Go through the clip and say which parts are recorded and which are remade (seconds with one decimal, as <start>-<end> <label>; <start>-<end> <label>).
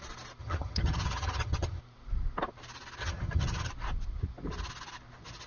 0.0-0.4 recorded; 0.4-1.8 remade; 1.8-3.0 recorded; 3.0-3.7 remade; 3.7-5.5 recorded